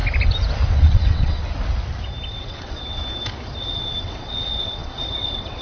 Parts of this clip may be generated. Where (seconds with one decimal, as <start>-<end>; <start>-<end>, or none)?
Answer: 0.8-1.4; 2.3-3.0; 3.6-5.6